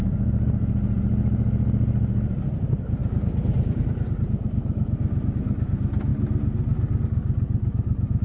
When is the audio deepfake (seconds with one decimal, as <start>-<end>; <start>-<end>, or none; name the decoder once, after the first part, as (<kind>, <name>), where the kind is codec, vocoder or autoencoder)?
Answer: none